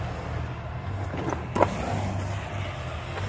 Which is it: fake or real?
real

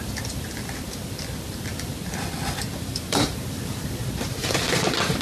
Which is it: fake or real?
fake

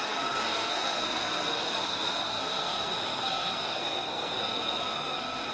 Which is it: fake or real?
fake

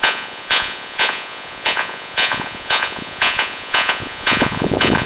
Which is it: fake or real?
fake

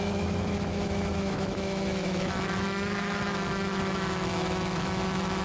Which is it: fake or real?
fake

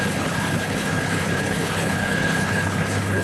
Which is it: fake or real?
fake